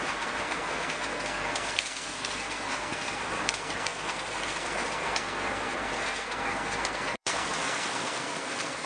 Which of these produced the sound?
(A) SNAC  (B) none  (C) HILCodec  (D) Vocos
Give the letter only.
A